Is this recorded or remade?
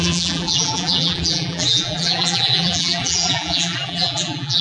remade